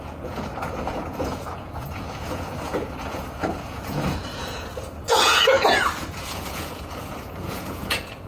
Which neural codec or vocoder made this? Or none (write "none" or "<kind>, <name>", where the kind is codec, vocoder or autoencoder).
vocoder, Vocos